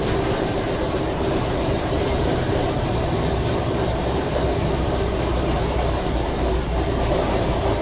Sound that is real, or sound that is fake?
fake